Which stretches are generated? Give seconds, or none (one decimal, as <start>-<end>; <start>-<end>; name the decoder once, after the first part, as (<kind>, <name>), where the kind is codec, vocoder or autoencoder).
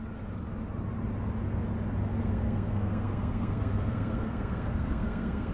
2.2-5.5 (codec, SNAC)